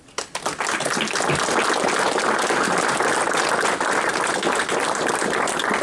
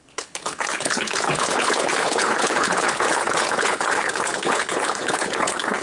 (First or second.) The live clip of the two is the first